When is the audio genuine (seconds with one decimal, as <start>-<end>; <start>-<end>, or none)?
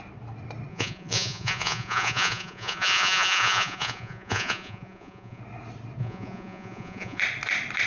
0.0-0.7; 5.4-6.0; 7.2-7.9